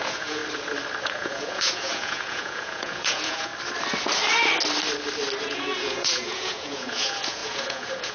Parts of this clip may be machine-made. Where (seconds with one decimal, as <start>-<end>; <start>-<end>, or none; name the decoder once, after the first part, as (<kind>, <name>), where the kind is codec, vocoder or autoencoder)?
0.0-0.4 (vocoder, Vocos); 1.0-3.5; 5.4-8.1